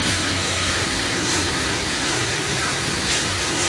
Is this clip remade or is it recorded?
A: remade